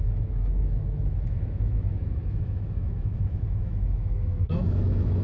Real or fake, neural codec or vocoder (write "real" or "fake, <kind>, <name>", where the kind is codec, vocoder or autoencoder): fake, autoencoder, DAC-VAE